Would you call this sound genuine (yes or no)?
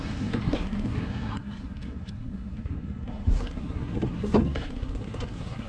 no